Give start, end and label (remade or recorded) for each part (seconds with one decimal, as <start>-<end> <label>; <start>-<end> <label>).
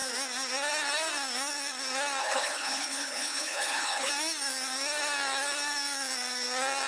0.0-2.2 recorded; 2.2-4.1 remade; 4.1-6.9 recorded